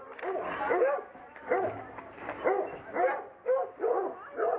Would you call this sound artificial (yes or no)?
no